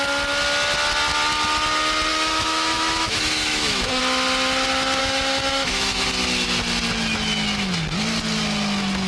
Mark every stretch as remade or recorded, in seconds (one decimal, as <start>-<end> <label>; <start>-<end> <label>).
0.0-2.1 recorded; 2.1-4.0 remade; 4.0-5.0 recorded; 5.0-6.1 remade; 6.1-9.1 recorded